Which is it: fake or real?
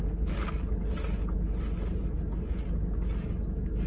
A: real